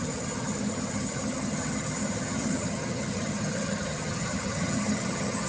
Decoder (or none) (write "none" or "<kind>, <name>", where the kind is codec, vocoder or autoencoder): vocoder, HiFi-GAN